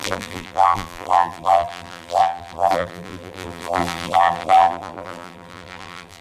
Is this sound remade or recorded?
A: remade